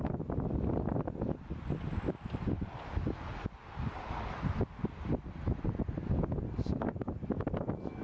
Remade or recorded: recorded